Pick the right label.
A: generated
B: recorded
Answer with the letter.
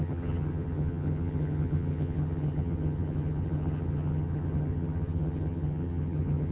A